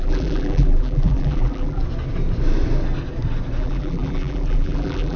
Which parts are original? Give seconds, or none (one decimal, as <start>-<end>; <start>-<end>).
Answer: 1.8-3.6